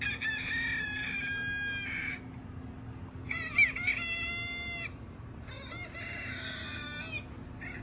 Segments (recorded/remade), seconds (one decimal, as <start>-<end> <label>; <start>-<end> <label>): 0.0-7.8 recorded